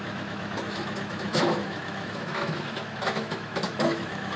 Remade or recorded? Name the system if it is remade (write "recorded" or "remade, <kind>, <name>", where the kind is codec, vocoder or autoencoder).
remade, autoencoder, DAC-VAE